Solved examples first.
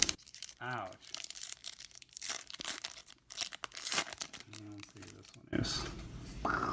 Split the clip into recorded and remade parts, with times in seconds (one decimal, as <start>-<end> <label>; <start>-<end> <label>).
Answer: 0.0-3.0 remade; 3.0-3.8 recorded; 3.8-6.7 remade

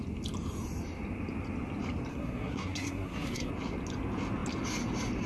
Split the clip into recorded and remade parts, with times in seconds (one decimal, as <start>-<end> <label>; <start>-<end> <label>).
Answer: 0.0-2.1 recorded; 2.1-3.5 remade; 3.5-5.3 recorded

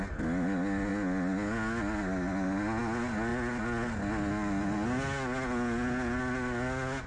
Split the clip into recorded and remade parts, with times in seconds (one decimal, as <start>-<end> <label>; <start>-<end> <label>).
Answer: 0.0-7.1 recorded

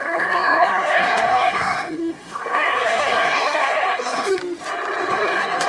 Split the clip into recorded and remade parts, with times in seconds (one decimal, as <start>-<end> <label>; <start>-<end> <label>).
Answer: 0.0-4.4 remade; 4.4-5.1 recorded; 5.1-5.7 remade